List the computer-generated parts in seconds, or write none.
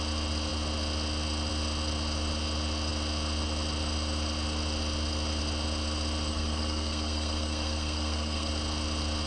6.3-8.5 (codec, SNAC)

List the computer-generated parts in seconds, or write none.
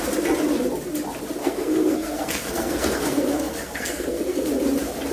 1.4-4.5 (codec, SNAC)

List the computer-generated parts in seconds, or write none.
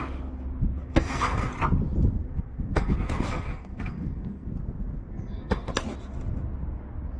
0.8-1.5 (codec, SNAC); 2.2-4.5; 5.1-5.7